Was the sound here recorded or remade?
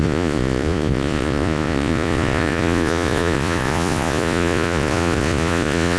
remade